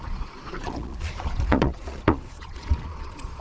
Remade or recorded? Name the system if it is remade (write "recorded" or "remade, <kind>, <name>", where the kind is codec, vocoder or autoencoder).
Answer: remade, vocoder, Vocos